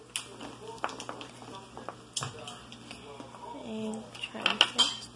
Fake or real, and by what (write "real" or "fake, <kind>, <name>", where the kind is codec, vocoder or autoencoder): real